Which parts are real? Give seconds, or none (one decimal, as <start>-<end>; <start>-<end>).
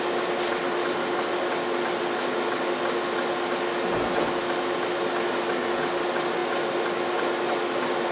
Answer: 0.0-8.1